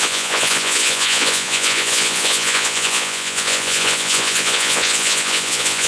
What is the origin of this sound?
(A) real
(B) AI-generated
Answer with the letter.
B